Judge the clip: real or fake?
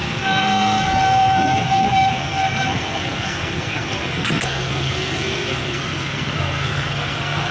fake